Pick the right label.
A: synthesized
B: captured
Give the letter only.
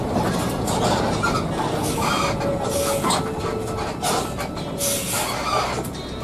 B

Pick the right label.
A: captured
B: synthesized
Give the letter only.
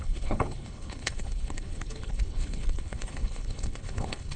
B